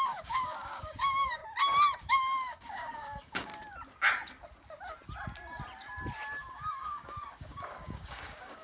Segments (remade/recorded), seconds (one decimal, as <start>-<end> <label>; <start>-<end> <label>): 0.0-1.4 remade; 1.4-2.1 recorded; 2.1-3.5 remade; 3.5-6.5 recorded; 6.5-8.6 remade